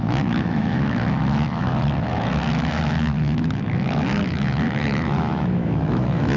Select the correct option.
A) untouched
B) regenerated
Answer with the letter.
B